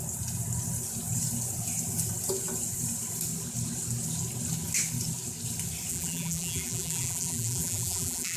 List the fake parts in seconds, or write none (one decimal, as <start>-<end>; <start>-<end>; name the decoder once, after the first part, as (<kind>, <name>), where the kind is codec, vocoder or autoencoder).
5.9-8.4 (vocoder, BigVGAN v2)